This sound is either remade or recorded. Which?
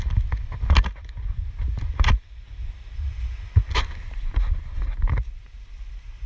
recorded